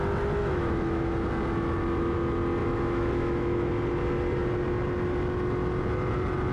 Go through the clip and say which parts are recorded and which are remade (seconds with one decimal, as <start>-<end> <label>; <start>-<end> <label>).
0.0-0.4 recorded; 0.4-1.1 remade; 1.1-2.6 recorded; 2.6-3.7 remade; 3.7-6.5 recorded